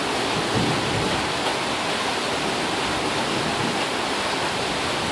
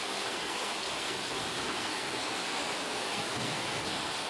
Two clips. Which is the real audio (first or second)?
first